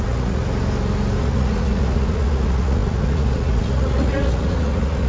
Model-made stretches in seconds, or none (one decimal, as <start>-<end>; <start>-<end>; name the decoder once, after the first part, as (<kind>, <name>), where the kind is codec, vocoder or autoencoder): 0.0-0.4 (vocoder, Vocos); 1.2-5.1